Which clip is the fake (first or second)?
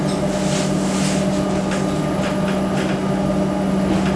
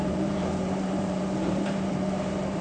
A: second